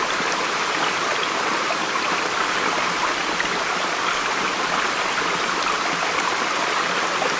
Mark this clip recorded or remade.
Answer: recorded